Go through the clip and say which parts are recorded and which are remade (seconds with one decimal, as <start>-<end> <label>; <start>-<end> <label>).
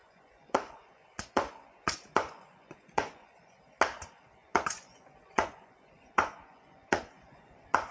0.0-3.6 remade; 3.6-4.4 recorded; 4.4-7.9 remade